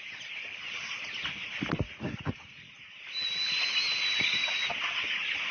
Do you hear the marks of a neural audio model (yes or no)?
no